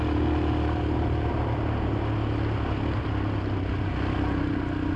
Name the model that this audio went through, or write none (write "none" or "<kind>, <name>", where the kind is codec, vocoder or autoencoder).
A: none